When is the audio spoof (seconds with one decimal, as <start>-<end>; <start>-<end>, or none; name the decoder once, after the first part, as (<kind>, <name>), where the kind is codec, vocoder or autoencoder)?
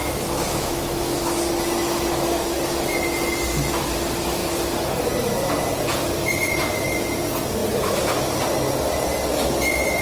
0.0-1.4 (autoencoder, DAC-VAE)